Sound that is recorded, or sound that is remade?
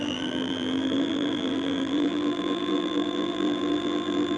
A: remade